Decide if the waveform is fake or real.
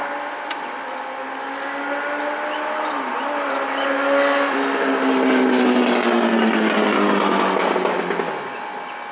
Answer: real